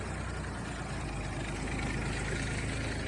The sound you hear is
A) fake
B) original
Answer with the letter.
B